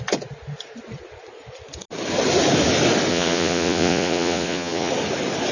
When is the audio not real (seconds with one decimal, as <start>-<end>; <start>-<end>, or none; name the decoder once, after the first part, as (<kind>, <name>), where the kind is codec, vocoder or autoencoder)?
3.1-4.9 (vocoder, Vocos)